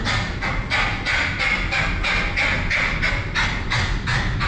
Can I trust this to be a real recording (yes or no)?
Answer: yes